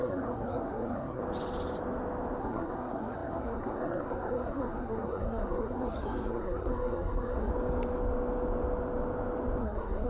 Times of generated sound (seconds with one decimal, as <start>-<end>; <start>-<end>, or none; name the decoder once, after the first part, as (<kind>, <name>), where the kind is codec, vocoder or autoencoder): 0.0-1.2 (codec, SNAC); 2.4-7.5; 9.6-10.1